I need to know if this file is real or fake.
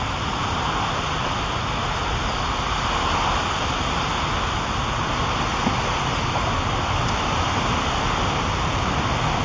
real